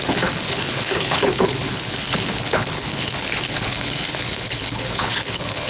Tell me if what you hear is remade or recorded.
remade